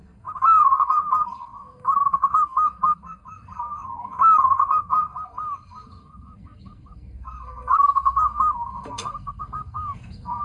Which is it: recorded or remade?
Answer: remade